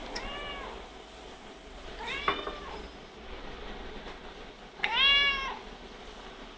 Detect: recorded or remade recorded